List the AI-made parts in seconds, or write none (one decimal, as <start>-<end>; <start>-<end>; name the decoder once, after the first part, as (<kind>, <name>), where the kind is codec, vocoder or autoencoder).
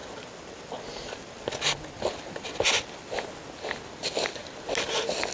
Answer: none